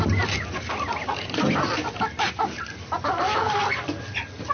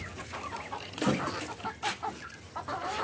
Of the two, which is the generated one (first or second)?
first